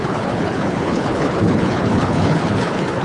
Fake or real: fake